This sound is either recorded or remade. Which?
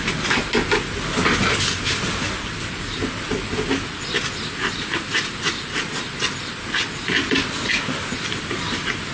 recorded